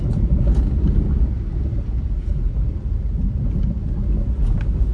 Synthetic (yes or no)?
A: no